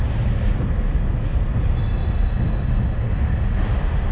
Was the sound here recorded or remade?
recorded